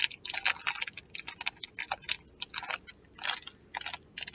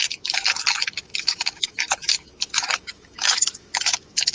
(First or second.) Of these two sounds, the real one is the first